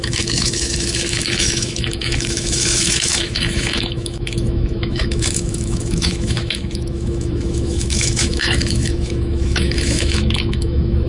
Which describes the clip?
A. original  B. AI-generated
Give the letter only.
B